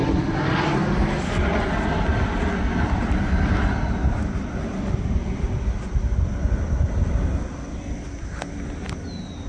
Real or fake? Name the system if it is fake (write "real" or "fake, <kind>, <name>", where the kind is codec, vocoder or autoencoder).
real